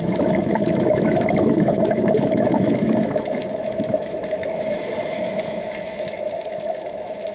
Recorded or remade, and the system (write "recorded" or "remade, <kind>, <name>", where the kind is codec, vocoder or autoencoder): remade, autoencoder, DAC-VAE